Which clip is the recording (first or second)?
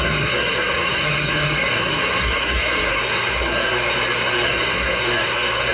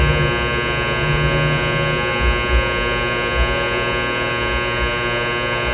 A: second